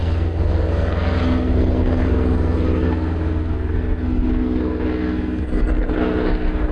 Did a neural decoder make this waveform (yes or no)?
yes